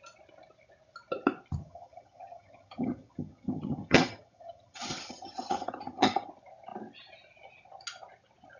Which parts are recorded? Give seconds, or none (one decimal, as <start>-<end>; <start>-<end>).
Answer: 0.0-1.6; 6.3-8.6